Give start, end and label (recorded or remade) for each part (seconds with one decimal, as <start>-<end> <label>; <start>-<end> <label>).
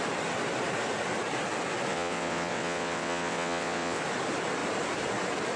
0.0-1.9 recorded; 1.9-4.0 remade; 4.0-5.6 recorded